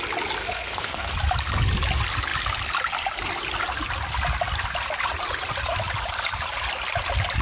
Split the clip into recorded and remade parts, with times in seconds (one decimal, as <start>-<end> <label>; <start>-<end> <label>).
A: 0.0-0.4 recorded; 0.4-1.1 remade; 1.1-7.4 recorded

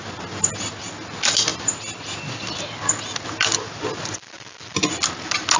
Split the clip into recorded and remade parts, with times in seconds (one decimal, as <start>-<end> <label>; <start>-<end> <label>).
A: 0.0-5.6 recorded

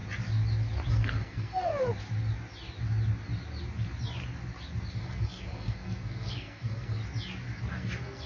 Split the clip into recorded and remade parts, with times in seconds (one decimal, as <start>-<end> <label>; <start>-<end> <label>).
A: 0.0-0.9 recorded; 0.9-1.7 remade; 1.7-4.9 recorded; 4.9-7.0 remade; 7.0-7.7 recorded; 7.7-8.3 remade

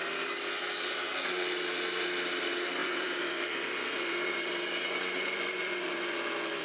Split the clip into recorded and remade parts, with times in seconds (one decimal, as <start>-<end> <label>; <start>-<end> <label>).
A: 0.0-2.8 recorded; 2.8-6.6 remade